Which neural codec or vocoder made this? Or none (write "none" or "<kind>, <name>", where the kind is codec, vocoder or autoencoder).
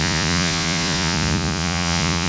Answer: vocoder, Vocos